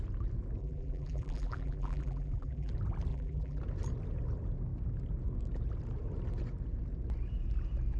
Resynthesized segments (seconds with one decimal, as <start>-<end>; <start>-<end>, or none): 0.6-2.7; 3.1-3.6